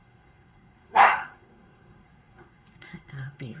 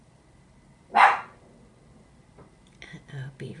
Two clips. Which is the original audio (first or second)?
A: second